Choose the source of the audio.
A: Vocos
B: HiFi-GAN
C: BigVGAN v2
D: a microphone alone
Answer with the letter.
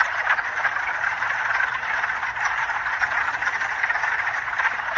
C